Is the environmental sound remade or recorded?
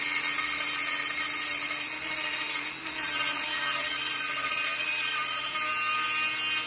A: recorded